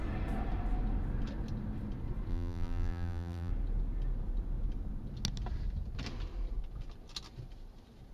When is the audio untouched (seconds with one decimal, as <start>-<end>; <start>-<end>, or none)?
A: 0.0-2.3; 3.5-8.1